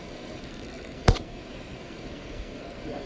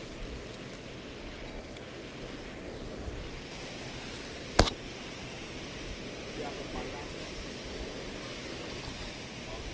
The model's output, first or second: first